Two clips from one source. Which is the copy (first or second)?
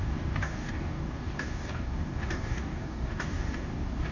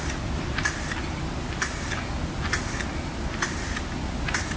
first